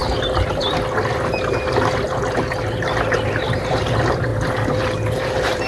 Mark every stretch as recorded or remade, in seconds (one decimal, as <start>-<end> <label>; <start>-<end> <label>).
0.0-3.4 recorded; 3.4-4.3 remade; 4.3-4.8 recorded; 4.8-5.7 remade